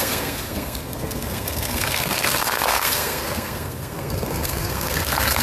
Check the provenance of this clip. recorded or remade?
remade